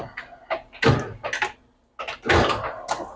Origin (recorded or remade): recorded